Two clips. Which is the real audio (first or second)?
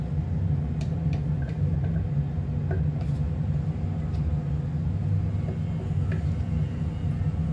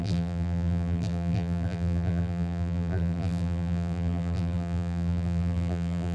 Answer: first